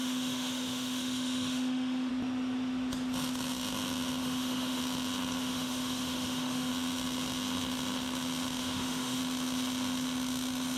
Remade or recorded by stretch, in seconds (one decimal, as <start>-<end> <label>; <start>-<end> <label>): 0.0-2.1 remade; 2.1-4.2 recorded; 4.2-4.8 remade; 4.8-5.4 recorded; 5.4-6.7 remade; 6.7-8.6 recorded; 8.6-9.2 remade; 9.2-10.8 recorded